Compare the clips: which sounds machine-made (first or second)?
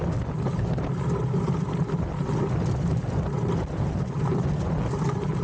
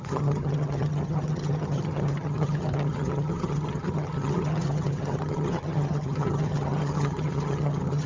second